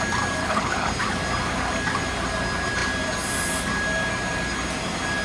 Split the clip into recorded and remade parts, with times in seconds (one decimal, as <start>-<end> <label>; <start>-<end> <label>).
0.0-0.4 recorded; 0.4-0.9 remade; 0.9-5.2 recorded